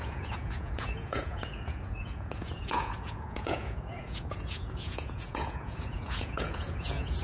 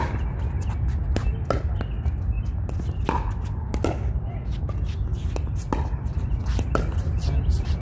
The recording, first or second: second